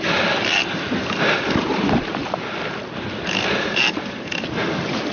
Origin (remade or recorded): remade